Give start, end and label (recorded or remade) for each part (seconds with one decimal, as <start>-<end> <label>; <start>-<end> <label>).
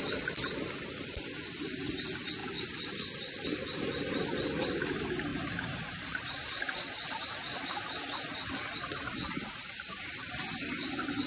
0.0-11.3 recorded